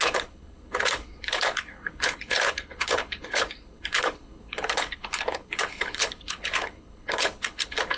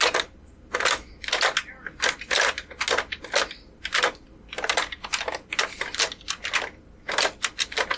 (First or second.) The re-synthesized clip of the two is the first